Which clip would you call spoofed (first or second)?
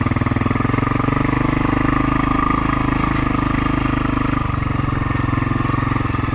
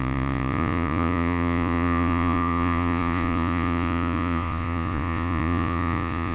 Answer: second